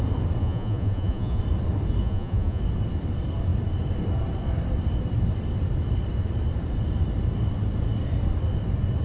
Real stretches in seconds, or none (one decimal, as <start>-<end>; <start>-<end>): 0.0-0.4; 1.4-2.0; 2.6-9.0